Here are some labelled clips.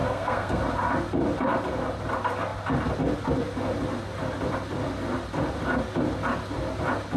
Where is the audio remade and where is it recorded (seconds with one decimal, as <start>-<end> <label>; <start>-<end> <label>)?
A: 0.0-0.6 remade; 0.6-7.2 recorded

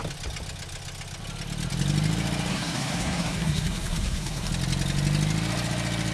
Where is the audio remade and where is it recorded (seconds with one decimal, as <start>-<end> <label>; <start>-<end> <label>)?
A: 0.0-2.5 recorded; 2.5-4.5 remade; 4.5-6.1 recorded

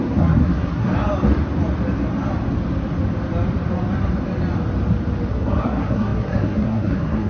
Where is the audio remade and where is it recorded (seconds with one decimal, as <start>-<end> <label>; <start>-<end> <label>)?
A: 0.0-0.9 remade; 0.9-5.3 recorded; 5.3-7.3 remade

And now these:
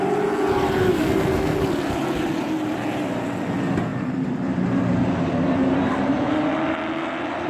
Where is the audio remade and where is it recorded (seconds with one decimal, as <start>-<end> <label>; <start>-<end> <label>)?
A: 0.0-0.9 recorded; 0.9-1.6 remade; 1.6-7.5 recorded

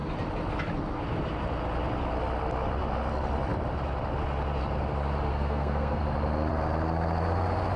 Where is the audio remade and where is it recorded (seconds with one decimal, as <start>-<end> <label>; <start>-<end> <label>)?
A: 0.0-5.3 recorded; 5.3-6.0 remade; 6.0-7.8 recorded

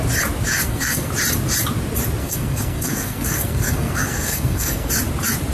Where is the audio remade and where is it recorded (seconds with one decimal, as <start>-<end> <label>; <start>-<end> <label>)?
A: 0.0-0.6 recorded; 0.6-1.1 remade; 1.1-2.2 recorded; 2.2-4.9 remade; 4.9-5.5 recorded

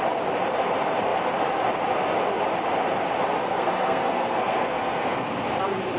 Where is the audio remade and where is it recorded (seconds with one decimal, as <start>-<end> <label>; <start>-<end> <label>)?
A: 0.0-3.4 recorded; 3.4-5.3 remade; 5.3-6.0 recorded